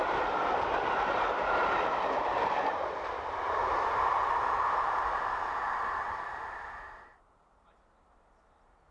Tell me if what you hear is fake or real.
fake